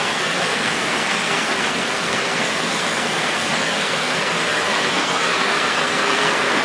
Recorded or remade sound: remade